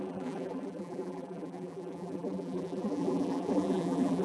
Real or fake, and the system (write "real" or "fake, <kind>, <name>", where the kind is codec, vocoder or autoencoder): fake, vocoder, BigVGAN v2